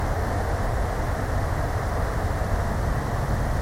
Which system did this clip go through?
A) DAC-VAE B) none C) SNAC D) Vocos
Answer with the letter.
B